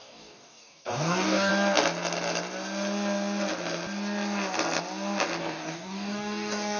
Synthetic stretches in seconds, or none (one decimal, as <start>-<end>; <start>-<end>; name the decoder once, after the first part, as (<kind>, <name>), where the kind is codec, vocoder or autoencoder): 0.0-1.5 (codec, DAC); 5.4-6.8